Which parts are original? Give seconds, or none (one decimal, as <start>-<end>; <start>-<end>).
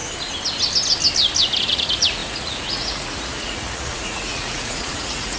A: 0.0-1.6